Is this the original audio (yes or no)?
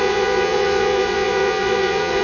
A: no